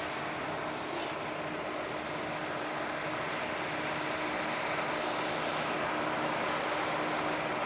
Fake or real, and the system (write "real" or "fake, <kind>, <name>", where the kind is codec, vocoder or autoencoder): real